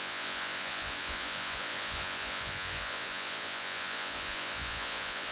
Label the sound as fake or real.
fake